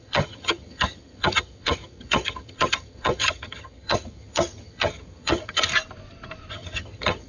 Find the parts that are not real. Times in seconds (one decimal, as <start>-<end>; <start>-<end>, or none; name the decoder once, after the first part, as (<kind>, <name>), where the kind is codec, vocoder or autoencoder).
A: 0.0-5.7 (vocoder, HiFi-GAN); 6.5-7.3